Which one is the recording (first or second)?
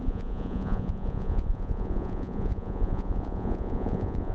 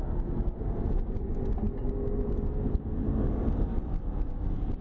second